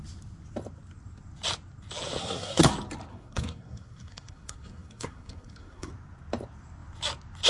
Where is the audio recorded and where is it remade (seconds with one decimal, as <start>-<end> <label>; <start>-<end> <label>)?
0.0-2.2 recorded; 2.2-2.7 remade; 2.7-3.1 recorded; 3.1-5.9 remade; 5.9-7.5 recorded

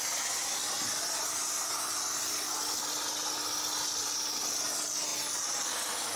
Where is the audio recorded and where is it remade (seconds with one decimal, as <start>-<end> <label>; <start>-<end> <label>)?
0.0-6.2 recorded